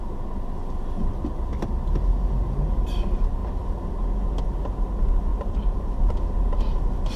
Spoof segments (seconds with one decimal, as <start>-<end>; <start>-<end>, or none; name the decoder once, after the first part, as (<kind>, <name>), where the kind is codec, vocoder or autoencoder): 5.3-6.1 (vocoder, BigVGAN v2)